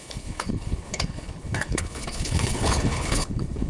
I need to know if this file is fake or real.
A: fake